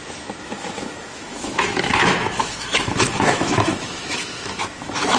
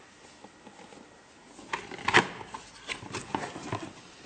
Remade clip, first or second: first